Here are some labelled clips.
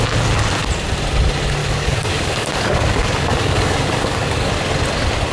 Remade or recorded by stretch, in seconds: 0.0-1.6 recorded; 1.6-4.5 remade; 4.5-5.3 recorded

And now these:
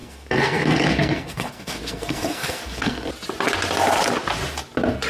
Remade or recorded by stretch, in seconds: 0.0-3.1 remade; 3.1-5.1 recorded

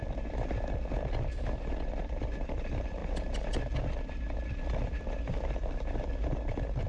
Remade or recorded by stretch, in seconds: 0.0-6.9 recorded

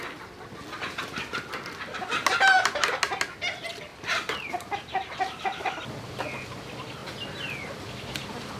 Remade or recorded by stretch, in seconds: 0.0-3.9 recorded; 3.9-5.9 remade; 5.9-7.0 recorded; 7.0-8.6 remade

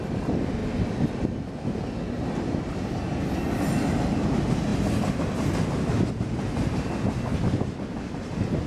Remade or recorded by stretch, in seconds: 0.0-8.7 recorded

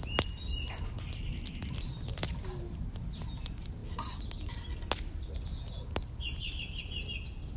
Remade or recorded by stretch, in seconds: 0.0-7.6 recorded

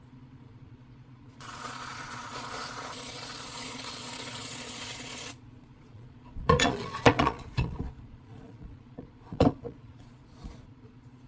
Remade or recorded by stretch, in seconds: 0.0-11.3 remade